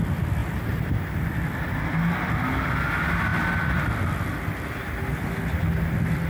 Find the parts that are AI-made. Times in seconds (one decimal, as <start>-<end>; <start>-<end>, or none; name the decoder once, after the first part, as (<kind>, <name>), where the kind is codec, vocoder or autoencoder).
0.4-0.9 (vocoder, BigVGAN v2)